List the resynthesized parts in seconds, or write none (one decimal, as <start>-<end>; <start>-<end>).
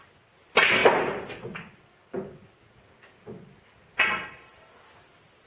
0.8-1.8